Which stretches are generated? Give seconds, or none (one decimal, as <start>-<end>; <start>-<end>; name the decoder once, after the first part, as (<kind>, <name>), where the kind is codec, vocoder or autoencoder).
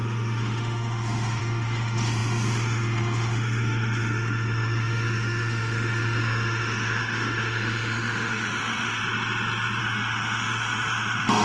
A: 0.0-9.0 (autoencoder, DAC-VAE); 9.8-11.4